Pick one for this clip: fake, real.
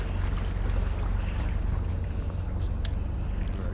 real